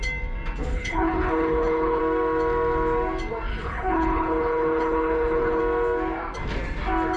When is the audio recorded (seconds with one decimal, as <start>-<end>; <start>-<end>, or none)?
0.0-0.7; 2.0-3.5; 5.6-7.2